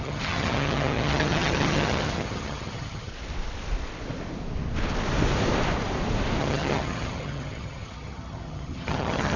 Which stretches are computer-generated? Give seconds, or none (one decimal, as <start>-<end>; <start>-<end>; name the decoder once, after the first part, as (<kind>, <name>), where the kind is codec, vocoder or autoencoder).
0.0-3.1 (vocoder, HiFi-GAN); 6.4-9.4